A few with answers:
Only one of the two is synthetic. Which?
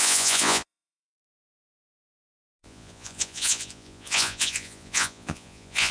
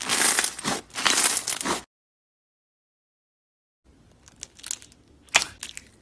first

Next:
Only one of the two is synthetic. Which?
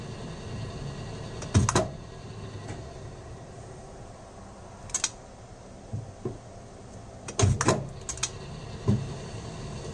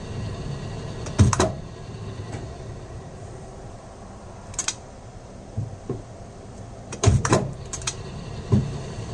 second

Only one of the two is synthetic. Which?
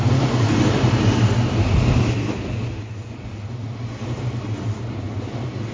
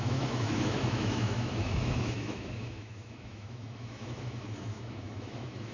second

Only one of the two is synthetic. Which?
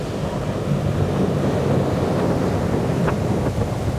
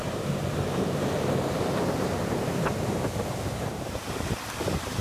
second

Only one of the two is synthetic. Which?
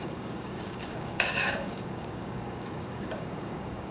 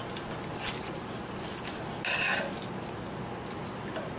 first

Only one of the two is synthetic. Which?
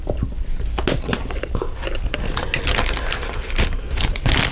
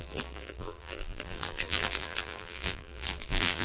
second